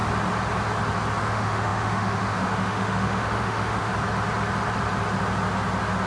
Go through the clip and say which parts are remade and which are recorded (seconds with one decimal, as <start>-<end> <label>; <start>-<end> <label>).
0.0-1.2 recorded; 1.2-3.9 remade; 3.9-6.1 recorded